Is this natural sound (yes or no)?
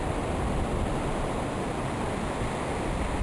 yes